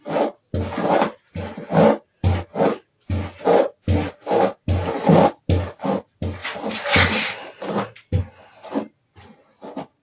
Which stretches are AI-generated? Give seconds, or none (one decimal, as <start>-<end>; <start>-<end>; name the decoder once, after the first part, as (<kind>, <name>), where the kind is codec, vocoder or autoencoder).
none